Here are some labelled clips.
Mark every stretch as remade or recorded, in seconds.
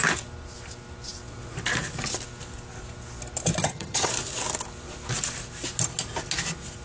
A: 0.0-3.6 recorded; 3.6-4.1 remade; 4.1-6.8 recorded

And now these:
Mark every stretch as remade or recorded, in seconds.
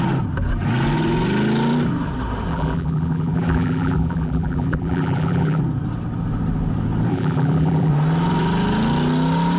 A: 0.0-2.5 recorded; 2.5-5.6 remade; 5.6-7.1 recorded; 7.1-7.9 remade; 7.9-9.6 recorded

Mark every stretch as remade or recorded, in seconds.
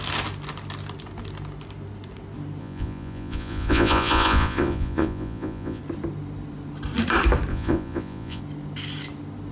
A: 0.0-2.6 recorded; 2.6-5.8 remade; 5.8-7.5 recorded; 7.5-8.4 remade; 8.4-9.5 recorded